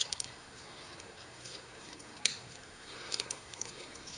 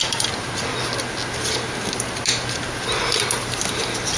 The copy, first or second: first